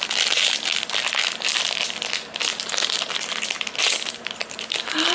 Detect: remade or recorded recorded